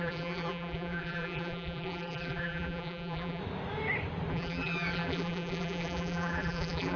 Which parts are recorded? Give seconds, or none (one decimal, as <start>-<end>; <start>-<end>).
3.4-4.3